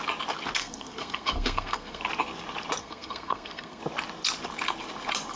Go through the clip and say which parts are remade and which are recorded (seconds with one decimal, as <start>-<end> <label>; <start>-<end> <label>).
0.0-0.6 recorded; 0.6-2.0 remade; 2.0-2.8 recorded; 2.8-3.8 remade; 3.8-5.4 recorded